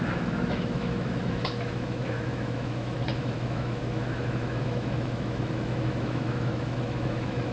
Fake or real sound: fake